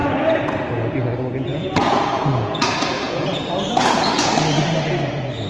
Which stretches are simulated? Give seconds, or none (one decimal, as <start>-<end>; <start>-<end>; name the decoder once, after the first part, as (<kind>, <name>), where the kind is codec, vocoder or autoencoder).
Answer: 1.5-4.3 (vocoder, Vocos)